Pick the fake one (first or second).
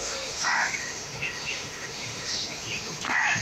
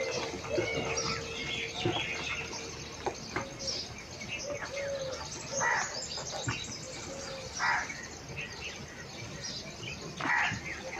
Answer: first